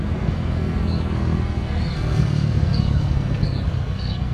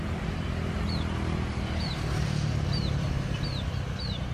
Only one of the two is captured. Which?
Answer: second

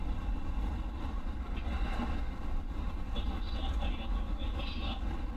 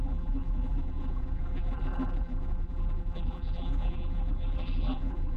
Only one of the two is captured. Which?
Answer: first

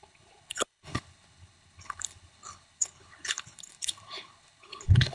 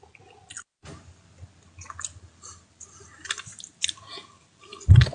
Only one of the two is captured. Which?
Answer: second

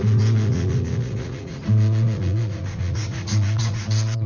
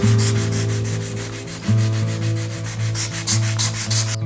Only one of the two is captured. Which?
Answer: second